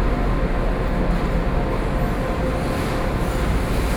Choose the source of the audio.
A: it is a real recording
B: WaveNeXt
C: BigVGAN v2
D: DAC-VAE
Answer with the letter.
A